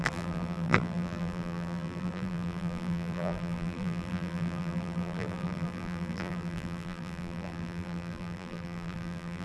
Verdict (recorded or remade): remade